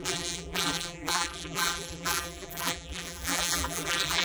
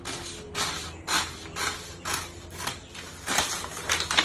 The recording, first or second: second